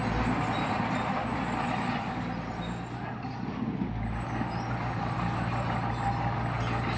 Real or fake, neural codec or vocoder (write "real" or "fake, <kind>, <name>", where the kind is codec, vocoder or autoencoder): real